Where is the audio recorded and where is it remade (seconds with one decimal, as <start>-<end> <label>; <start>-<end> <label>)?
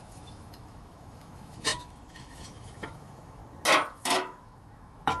0.0-3.4 remade; 3.4-3.9 recorded; 3.9-5.2 remade